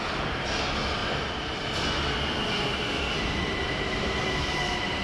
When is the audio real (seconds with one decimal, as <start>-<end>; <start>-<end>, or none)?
0.0-5.0